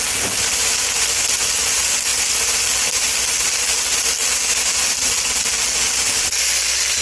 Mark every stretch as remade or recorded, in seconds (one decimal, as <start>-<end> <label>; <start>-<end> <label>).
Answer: 0.0-7.0 recorded

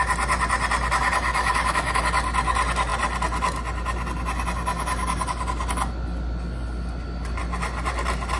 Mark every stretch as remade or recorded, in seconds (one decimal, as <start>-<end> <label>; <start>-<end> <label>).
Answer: 0.0-1.3 recorded; 1.3-2.0 remade; 2.0-8.4 recorded

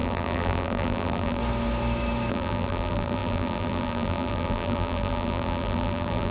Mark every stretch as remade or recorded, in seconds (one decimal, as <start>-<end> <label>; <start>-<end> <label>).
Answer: 0.0-1.4 remade; 1.4-2.3 recorded; 2.3-6.3 remade